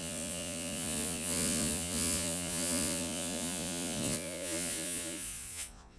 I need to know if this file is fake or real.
fake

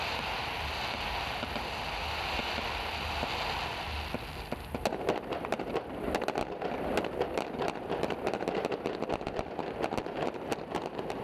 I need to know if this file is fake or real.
real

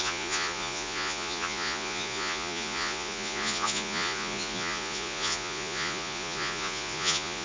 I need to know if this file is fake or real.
fake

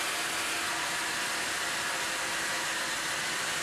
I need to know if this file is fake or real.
real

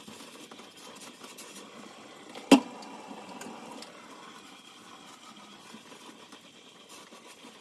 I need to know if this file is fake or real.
real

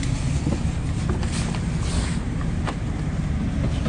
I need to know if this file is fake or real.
real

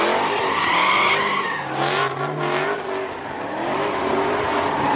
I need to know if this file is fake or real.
real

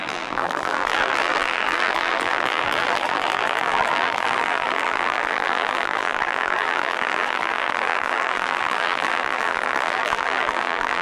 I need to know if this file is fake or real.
fake